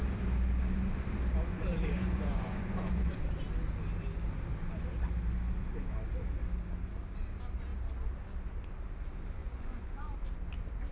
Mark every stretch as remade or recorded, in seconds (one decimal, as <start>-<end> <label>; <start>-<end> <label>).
0.0-1.5 recorded; 1.5-3.2 remade; 3.2-9.4 recorded; 9.4-10.1 remade; 10.1-10.9 recorded